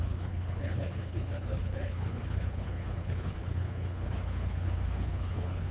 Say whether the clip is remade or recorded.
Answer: remade